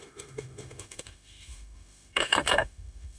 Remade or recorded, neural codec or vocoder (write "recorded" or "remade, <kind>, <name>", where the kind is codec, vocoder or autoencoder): remade, autoencoder, DAC-VAE